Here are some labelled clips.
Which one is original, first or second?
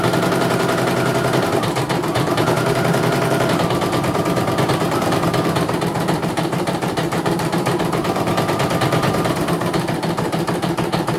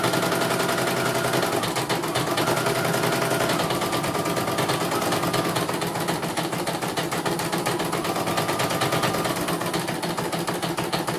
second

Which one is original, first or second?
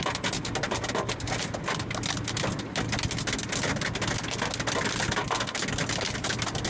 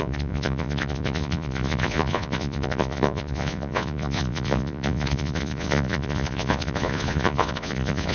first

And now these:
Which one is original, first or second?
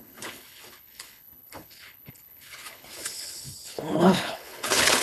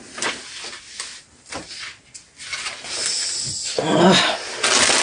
second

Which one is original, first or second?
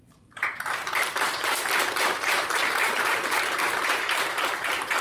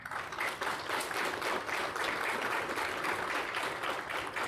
second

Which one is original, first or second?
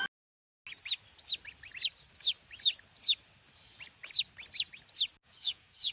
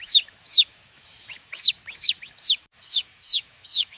first